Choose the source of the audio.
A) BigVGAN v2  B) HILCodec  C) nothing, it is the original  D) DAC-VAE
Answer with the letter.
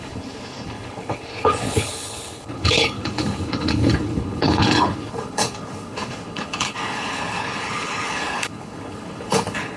B